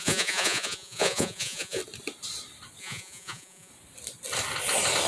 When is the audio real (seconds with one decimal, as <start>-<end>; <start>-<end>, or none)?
1.8-2.8; 3.7-5.1

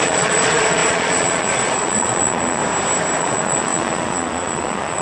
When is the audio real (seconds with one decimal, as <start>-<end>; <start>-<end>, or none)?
2.6-3.2

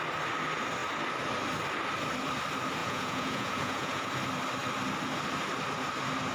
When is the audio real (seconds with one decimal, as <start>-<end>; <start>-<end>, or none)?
0.0-2.8; 4.1-6.3